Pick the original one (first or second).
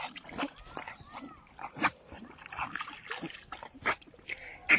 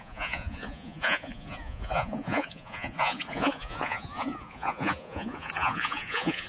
first